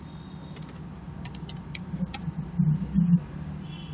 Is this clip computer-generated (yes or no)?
no